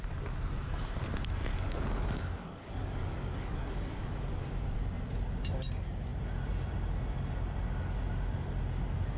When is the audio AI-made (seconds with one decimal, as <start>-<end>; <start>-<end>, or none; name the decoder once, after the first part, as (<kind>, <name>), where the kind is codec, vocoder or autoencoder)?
1.5-4.1 (codec, DAC)